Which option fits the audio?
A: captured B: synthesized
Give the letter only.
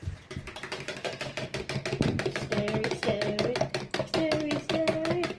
A